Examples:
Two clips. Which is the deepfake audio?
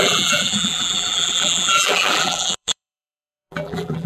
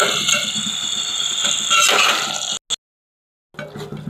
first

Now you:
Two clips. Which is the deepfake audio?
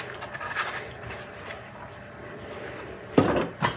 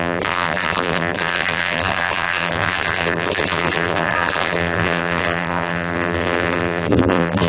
second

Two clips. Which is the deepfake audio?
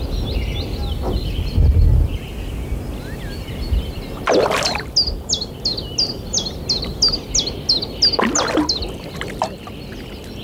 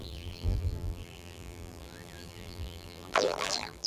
second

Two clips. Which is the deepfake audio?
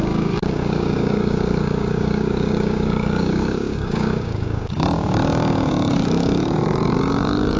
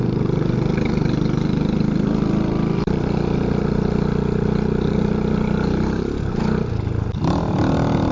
first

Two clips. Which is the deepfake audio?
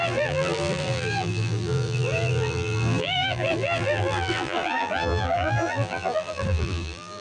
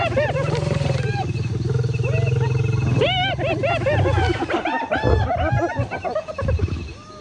first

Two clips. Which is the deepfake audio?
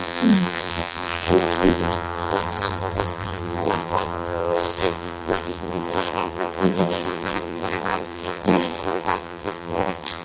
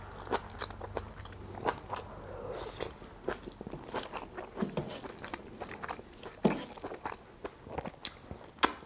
first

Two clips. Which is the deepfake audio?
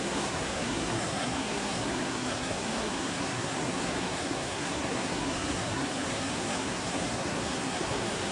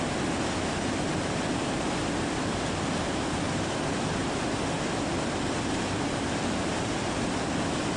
first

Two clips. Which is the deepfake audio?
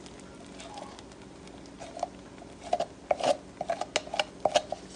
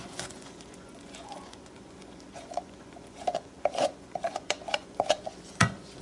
second